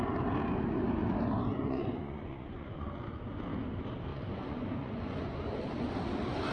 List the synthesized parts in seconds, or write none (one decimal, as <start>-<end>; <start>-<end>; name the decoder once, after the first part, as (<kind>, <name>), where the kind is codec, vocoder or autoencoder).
1.5-2.9 (vocoder, Vocos); 4.1-5.4